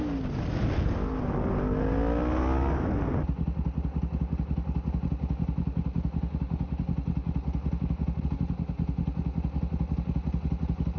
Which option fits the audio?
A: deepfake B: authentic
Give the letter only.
B